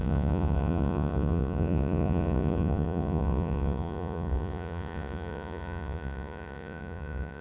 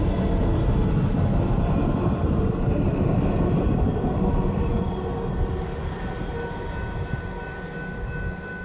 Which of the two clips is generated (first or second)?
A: first